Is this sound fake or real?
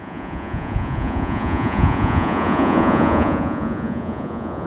fake